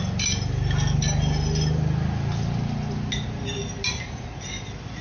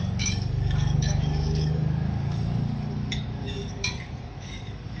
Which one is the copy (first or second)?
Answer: second